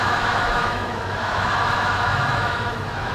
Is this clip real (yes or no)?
no